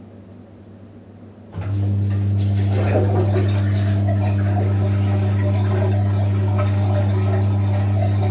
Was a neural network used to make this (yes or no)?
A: no